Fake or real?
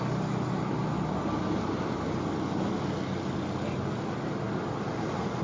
real